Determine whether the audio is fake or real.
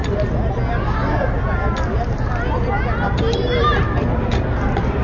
real